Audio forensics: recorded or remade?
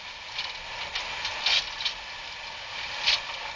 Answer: recorded